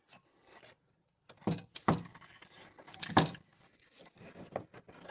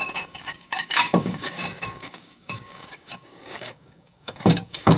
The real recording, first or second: first